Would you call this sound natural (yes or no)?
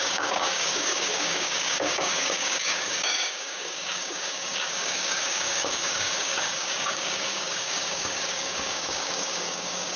no